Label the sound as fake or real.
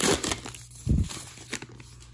real